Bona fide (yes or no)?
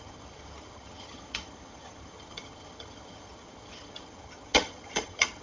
no